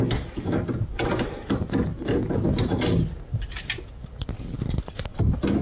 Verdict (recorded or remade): recorded